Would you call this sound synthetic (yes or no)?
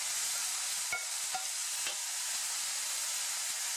no